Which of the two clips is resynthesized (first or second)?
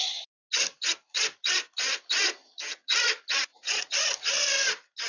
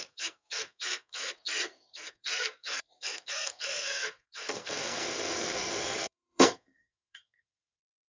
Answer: second